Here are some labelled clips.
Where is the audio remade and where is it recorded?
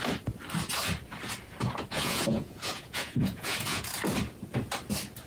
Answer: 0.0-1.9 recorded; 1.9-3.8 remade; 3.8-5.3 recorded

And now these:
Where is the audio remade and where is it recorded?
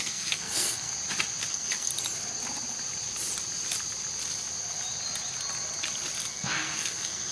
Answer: 0.0-0.9 remade; 0.9-1.5 recorded; 1.5-1.9 remade; 1.9-6.3 recorded; 6.3-7.3 remade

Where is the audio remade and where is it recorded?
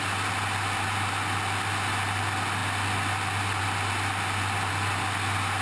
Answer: 0.0-5.6 recorded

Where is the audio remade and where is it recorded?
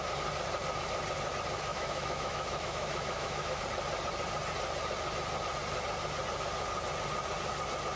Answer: 0.0-1.7 recorded; 1.7-3.6 remade; 3.6-8.0 recorded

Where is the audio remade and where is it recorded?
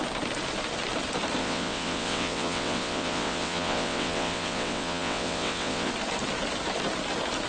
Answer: 0.0-1.4 recorded; 1.4-5.9 remade; 5.9-7.5 recorded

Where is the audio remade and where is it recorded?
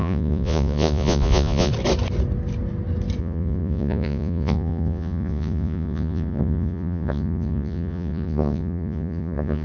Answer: 0.0-1.7 remade; 1.7-3.2 recorded; 3.2-9.6 remade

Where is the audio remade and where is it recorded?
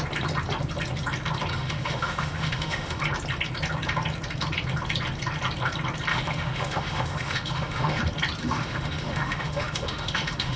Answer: 0.0-1.5 recorded; 1.5-3.0 remade; 3.0-6.1 recorded; 6.1-8.0 remade; 8.0-8.4 recorded; 8.4-10.6 remade